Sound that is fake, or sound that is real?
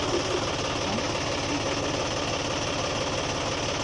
real